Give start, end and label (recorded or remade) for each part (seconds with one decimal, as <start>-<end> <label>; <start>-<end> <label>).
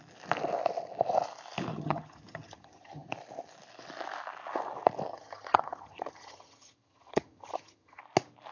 0.0-1.7 recorded; 1.7-3.1 remade; 3.1-5.1 recorded; 5.1-8.0 remade; 8.0-8.5 recorded